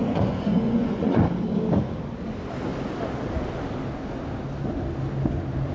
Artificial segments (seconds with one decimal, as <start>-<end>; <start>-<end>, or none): 0.0-1.2